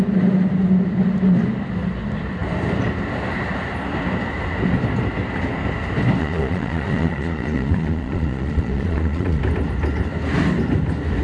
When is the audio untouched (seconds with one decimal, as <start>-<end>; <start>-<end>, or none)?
0.0-6.2; 9.4-11.2